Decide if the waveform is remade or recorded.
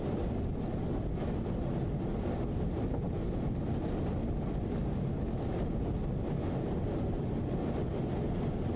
recorded